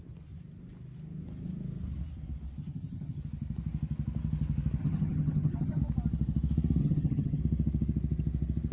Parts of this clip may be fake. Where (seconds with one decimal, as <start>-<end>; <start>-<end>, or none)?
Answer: 2.6-3.2; 4.8-5.8; 6.8-7.4